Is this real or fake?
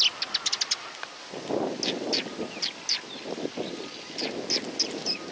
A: real